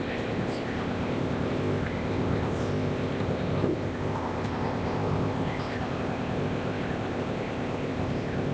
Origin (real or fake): fake